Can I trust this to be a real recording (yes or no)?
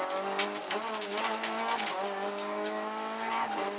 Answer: no